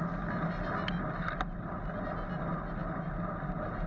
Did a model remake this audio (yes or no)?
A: no